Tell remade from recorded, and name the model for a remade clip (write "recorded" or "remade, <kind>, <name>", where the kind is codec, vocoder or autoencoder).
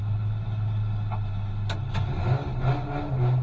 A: recorded